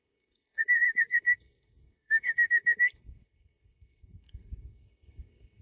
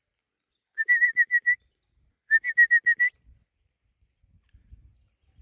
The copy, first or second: first